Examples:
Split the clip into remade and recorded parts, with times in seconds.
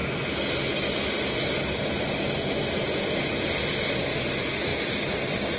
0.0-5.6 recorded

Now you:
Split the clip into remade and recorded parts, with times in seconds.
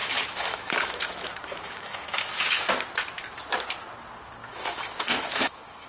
0.0-2.7 remade; 2.7-4.4 recorded; 4.4-5.9 remade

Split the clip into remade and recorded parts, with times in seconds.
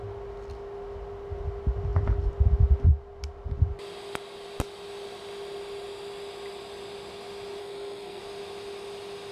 0.0-7.6 recorded; 7.6-8.2 remade; 8.2-9.3 recorded